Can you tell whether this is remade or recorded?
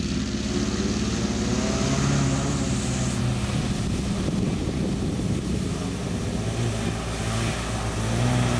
recorded